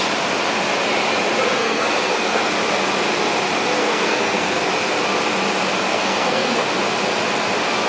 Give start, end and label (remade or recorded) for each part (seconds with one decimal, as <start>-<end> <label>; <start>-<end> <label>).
0.0-1.6 recorded; 1.6-2.4 remade; 2.4-3.8 recorded; 3.8-4.7 remade; 4.7-5.9 recorded; 5.9-6.7 remade; 6.7-7.9 recorded